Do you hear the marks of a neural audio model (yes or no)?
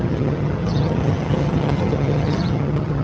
yes